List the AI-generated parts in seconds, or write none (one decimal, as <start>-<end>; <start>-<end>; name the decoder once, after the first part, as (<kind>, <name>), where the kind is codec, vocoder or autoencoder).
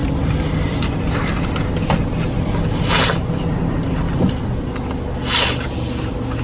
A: none